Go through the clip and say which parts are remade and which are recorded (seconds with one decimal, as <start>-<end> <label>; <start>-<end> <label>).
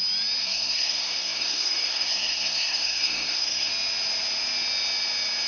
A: 0.0-0.4 recorded; 0.4-3.7 remade; 3.7-5.5 recorded